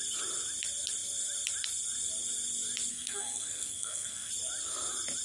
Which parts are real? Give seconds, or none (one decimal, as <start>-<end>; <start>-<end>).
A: 0.0-2.9; 4.3-5.2